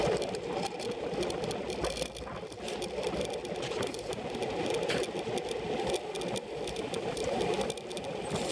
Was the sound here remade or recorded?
recorded